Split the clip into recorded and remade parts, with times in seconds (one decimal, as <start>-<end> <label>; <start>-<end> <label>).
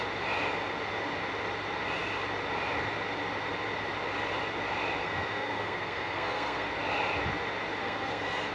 0.0-5.0 recorded; 5.0-6.7 remade; 6.7-7.8 recorded; 7.8-8.5 remade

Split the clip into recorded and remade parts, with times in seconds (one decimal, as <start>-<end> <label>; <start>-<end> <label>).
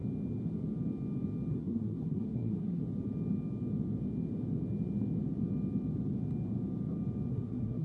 0.0-1.5 recorded; 1.5-2.8 remade; 2.8-7.3 recorded; 7.3-7.8 remade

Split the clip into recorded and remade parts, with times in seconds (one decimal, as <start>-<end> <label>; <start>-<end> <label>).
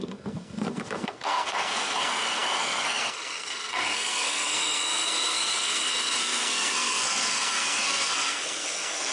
0.0-9.1 remade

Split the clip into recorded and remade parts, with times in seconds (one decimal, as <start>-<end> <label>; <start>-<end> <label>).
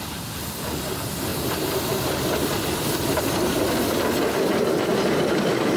0.0-5.8 recorded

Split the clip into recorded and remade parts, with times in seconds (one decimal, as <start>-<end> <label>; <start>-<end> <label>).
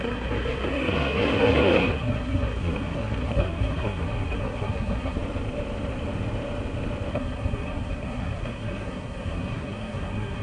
0.0-5.2 remade; 5.2-7.1 recorded; 7.1-10.4 remade